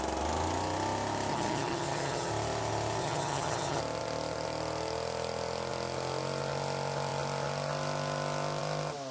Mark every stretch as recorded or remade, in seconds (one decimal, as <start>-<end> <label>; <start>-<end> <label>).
0.0-1.3 recorded; 1.3-2.3 remade; 2.3-3.0 recorded; 3.0-3.8 remade; 3.8-9.1 recorded